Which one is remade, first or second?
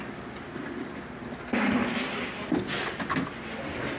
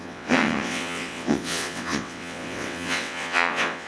second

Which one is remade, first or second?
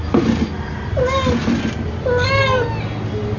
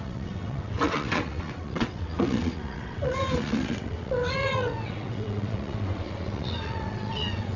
second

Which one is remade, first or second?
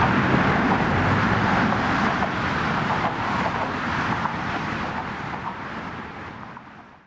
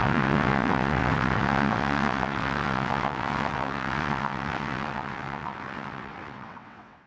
second